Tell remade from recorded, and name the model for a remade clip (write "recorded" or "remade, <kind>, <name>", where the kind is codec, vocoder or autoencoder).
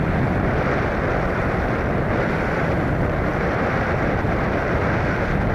recorded